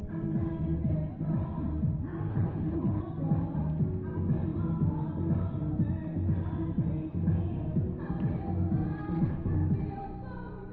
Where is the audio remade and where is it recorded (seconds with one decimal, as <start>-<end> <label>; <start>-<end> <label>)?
0.0-2.3 recorded; 2.3-3.0 remade; 3.0-10.7 recorded